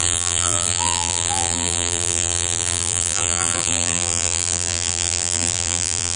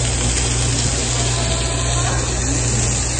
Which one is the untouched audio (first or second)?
second